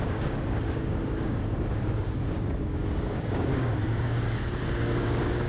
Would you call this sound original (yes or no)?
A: no